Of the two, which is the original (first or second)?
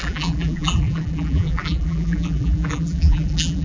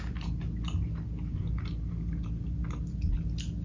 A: second